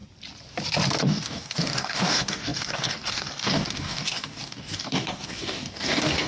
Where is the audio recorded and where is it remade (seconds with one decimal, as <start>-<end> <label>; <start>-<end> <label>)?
0.0-1.0 recorded; 1.0-6.3 remade